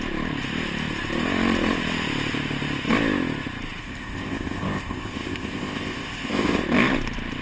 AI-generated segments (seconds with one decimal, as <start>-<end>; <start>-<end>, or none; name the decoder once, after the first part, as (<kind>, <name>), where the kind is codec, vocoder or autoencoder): 3.8-6.6 (codec, ZipCodec)